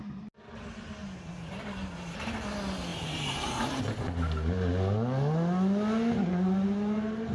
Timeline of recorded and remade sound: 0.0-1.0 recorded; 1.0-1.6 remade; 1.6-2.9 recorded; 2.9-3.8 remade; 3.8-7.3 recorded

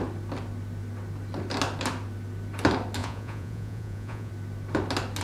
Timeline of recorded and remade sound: 0.0-3.0 recorded; 3.0-4.3 remade; 4.3-5.2 recorded

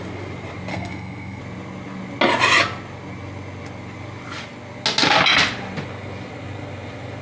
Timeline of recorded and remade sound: 0.0-0.7 recorded; 0.7-1.4 remade; 1.4-7.2 recorded